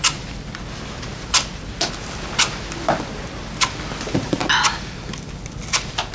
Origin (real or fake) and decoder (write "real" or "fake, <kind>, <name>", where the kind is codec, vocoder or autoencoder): real